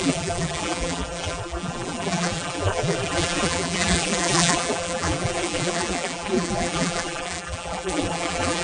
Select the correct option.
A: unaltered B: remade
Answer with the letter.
B